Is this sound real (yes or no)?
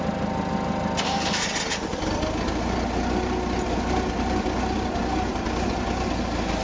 yes